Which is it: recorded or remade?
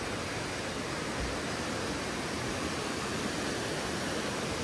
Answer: recorded